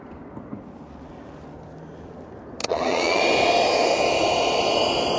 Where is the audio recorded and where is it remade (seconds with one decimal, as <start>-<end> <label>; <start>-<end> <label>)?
0.0-2.6 recorded; 2.6-3.2 remade; 3.2-5.2 recorded